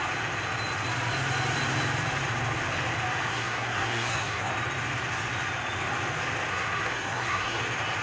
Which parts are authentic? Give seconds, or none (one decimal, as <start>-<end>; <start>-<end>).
0.0-3.3; 4.5-6.5; 7.6-8.0